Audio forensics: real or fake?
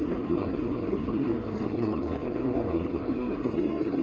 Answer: fake